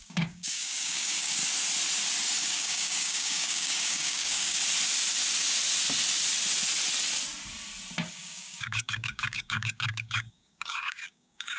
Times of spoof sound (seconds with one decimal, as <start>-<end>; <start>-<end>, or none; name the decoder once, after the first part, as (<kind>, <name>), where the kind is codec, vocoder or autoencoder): 0.0-1.4 (codec, DAC); 2.4-4.6; 8.1-11.6